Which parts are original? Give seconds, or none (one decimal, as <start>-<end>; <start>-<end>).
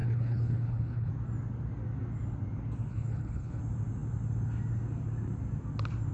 1.1-2.9; 3.6-6.1